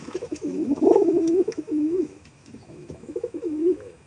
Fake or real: fake